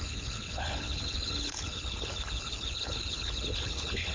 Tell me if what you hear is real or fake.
fake